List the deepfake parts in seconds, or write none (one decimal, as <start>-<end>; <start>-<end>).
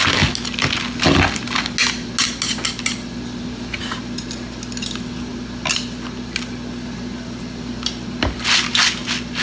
none